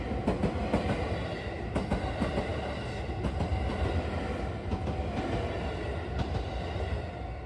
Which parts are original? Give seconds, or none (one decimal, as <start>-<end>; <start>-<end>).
0.0-7.5